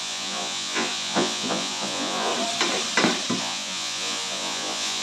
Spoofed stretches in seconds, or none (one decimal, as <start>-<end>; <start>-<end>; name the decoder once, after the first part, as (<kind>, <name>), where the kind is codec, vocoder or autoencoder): 0.0-2.3 (vocoder, Vocos); 3.4-5.0